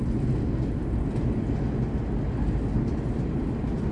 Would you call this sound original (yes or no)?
yes